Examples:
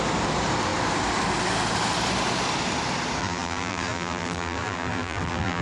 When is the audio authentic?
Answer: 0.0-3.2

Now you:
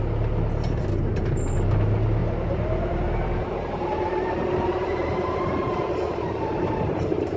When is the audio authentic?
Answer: 0.0-2.2; 6.6-7.4

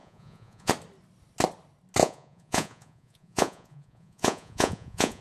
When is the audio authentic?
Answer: 0.7-2.0

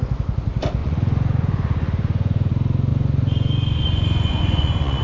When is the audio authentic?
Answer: 0.0-0.8; 2.5-2.9

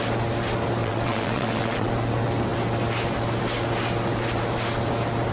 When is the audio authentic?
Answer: 0.0-0.8; 1.9-5.3

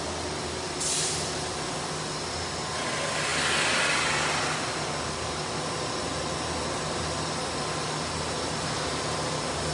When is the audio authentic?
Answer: 0.0-9.7

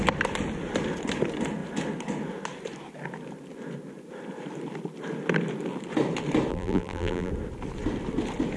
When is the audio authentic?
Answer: 0.0-6.5; 7.3-8.6

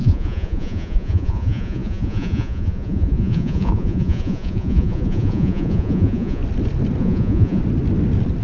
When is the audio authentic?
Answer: 6.4-7.0; 7.6-8.4